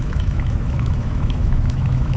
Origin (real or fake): fake